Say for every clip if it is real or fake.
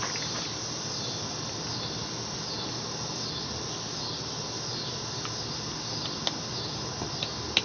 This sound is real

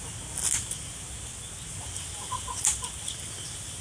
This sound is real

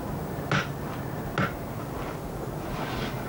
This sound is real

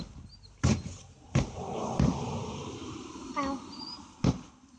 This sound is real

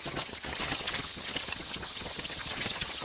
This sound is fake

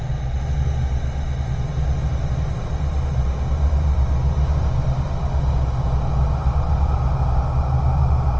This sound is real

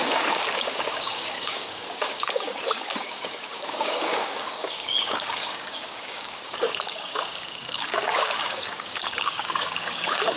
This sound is fake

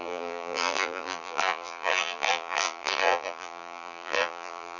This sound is fake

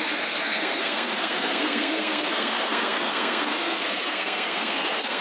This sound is fake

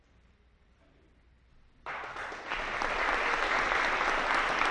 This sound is fake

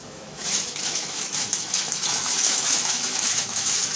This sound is fake